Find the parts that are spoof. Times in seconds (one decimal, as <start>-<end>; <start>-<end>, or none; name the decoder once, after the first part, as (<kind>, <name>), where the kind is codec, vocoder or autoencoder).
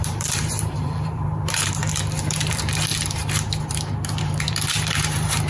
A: 0.0-1.8 (vocoder, BigVGAN v2); 2.4-2.9; 4.2-5.5